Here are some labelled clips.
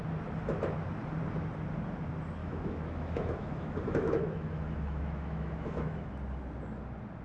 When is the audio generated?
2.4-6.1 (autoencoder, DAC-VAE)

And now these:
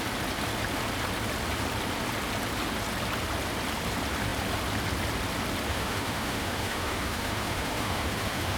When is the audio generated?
5.7-8.6 (autoencoder, DAC-VAE)

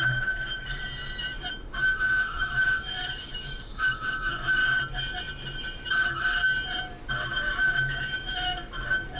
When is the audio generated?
0.0-0.8 (autoencoder, DAC-VAE); 1.5-4.6; 5.9-6.4; 7.1-9.2

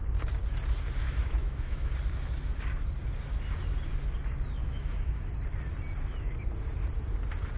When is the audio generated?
1.0-1.9 (autoencoder, DAC-VAE); 4.6-5.2